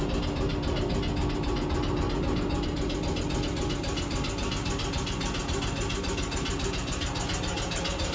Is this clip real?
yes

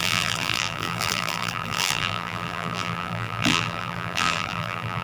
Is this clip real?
no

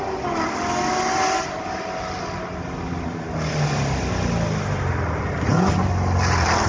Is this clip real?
yes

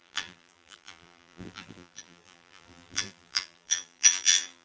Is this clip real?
no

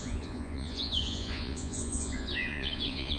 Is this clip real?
no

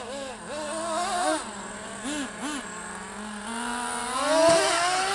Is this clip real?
yes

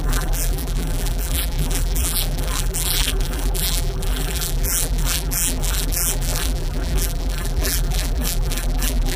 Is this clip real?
no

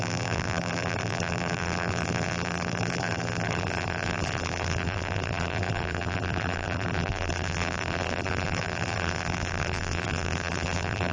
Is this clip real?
no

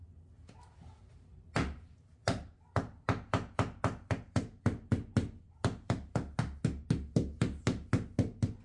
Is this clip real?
yes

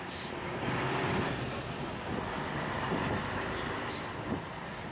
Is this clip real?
yes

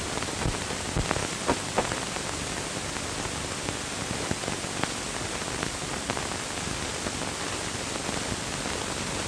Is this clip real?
yes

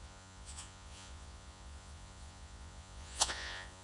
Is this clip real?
no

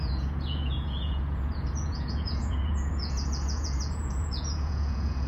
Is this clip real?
no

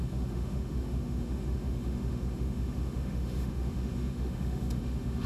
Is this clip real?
no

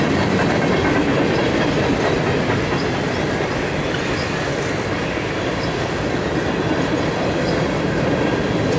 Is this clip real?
yes